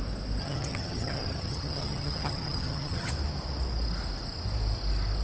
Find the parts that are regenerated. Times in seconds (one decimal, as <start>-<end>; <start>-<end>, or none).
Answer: 0.4-3.1